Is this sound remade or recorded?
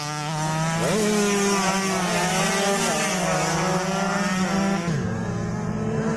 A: recorded